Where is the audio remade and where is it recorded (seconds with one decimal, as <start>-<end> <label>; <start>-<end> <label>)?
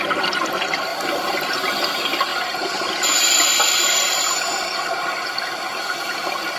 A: 0.0-6.6 recorded